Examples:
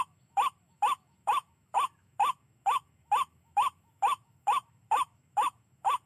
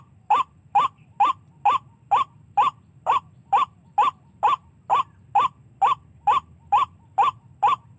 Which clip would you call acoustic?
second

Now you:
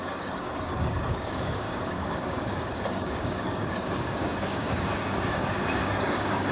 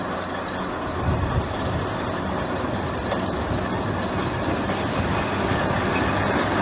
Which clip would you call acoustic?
second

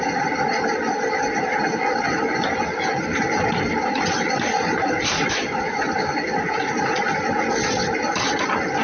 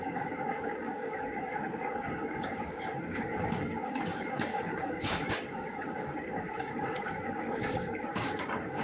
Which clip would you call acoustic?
first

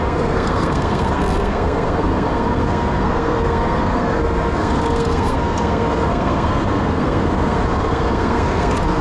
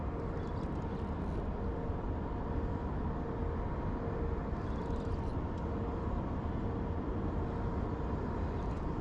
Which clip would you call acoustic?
second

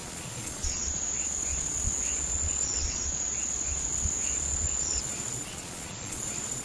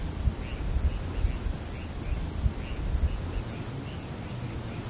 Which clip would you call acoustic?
second